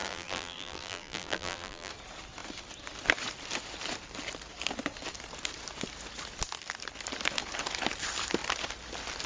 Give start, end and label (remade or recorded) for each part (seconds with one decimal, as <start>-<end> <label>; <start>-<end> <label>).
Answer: 0.0-1.9 remade; 1.9-9.3 recorded